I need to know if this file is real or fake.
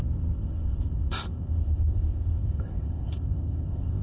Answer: fake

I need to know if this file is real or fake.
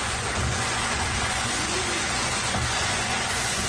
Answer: fake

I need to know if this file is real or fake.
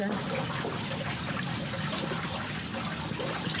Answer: real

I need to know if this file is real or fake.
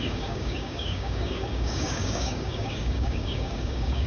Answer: fake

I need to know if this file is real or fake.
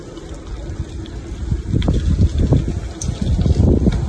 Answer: real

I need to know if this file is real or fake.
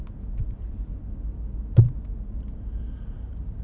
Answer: real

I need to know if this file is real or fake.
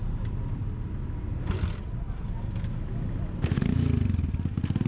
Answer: real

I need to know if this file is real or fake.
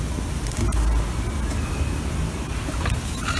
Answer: real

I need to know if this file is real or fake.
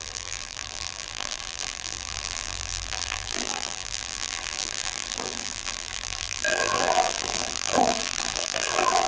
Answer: fake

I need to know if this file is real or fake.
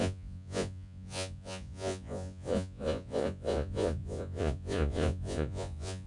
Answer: fake